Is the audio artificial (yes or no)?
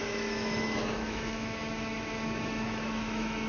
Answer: yes